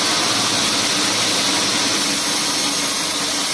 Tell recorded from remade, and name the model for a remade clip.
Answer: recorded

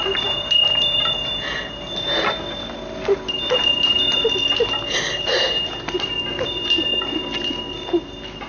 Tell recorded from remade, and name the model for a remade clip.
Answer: recorded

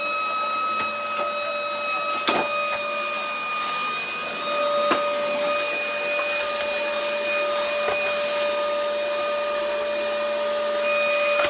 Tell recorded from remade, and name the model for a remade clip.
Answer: recorded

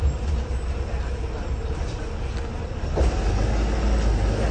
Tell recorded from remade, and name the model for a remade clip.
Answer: recorded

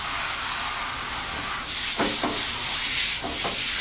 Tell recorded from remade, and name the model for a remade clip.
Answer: recorded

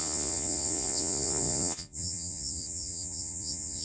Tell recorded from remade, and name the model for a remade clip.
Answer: remade, vocoder, Vocos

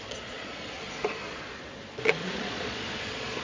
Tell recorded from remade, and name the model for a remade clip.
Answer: remade, vocoder, Vocos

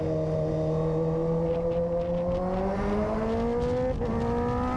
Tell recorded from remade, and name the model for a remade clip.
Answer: recorded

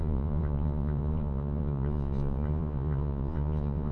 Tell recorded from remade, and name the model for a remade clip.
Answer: remade, vocoder, Vocos